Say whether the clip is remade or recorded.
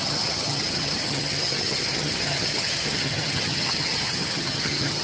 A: remade